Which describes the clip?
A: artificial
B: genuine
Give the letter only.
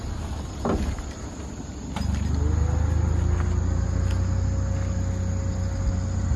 B